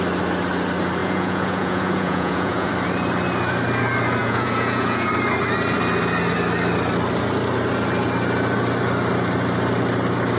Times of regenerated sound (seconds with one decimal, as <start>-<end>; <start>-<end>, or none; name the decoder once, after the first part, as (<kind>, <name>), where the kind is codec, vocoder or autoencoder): 1.0-2.7 (vocoder, Vocos); 4.2-5.1